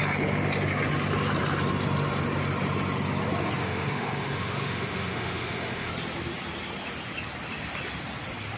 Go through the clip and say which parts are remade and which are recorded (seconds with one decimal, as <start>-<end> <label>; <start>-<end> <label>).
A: 0.0-3.6 recorded; 3.6-5.9 remade; 5.9-8.6 recorded